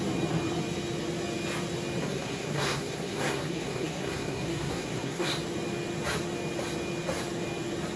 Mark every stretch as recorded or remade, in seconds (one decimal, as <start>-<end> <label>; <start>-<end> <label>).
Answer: 0.0-2.0 recorded; 2.0-5.3 remade; 5.3-8.0 recorded